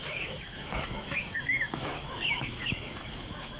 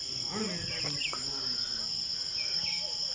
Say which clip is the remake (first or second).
first